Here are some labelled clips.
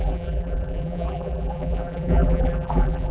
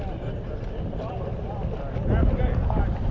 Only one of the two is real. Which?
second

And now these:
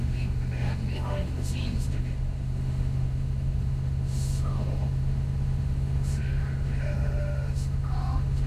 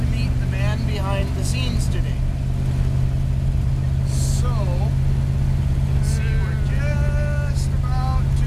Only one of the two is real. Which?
second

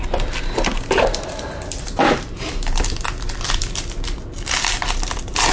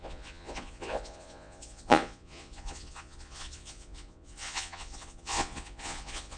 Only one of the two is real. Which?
first